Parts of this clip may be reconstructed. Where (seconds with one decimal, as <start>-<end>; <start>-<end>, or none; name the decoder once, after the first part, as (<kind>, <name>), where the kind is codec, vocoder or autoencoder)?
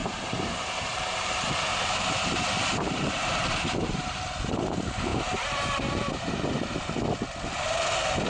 0.0-4.2 (vocoder, BigVGAN v2); 5.1-6.9